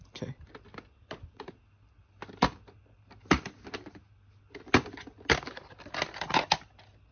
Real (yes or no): yes